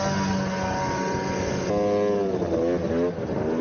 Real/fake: real